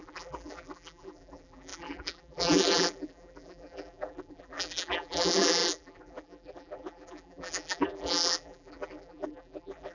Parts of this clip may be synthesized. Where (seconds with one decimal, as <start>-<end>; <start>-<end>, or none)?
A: 0.0-9.9